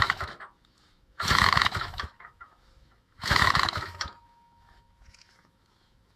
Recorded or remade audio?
remade